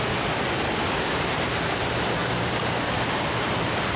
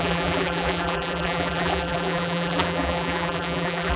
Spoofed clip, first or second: second